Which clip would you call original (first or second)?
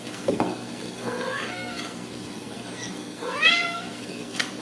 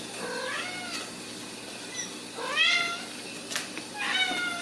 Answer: second